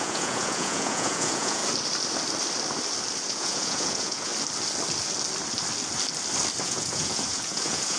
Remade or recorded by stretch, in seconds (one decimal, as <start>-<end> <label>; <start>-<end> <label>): 0.0-1.6 remade; 1.6-3.3 recorded; 3.3-4.3 remade; 4.3-6.6 recorded; 6.6-8.0 remade